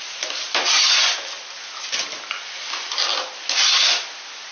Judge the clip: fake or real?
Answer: real